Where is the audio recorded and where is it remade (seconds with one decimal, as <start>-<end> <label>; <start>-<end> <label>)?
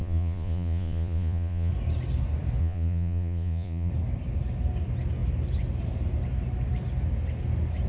0.0-1.7 remade; 1.7-2.6 recorded; 2.6-3.9 remade; 3.9-7.9 recorded